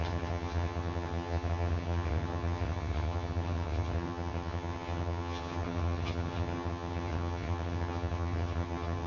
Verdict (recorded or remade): remade